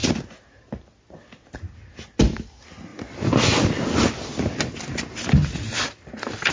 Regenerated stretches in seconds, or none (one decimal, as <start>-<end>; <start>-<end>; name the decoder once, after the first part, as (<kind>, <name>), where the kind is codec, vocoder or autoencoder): none